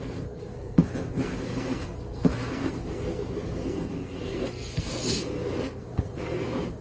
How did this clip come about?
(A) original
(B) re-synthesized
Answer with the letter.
B